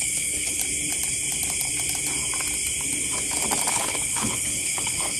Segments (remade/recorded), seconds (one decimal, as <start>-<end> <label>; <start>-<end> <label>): 0.0-0.6 remade; 0.6-3.7 recorded; 3.7-5.2 remade